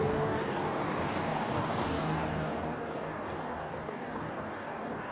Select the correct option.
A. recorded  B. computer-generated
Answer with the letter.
B